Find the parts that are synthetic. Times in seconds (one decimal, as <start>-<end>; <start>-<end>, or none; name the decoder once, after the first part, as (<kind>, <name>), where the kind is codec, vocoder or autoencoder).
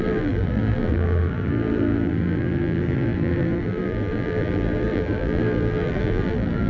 0.0-6.7 (vocoder, BigVGAN v2)